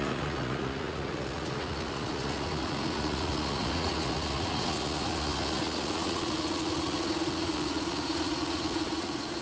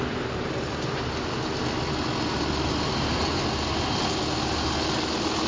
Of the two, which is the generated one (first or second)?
first